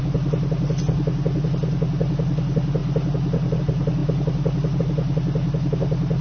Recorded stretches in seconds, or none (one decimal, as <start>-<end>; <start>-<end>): 0.0-6.2